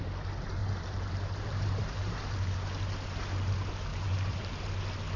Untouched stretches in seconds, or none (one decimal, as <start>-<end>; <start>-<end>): 0.0-0.6; 2.6-3.9; 4.7-5.2